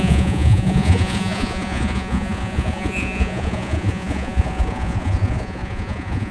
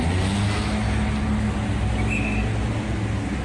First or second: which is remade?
first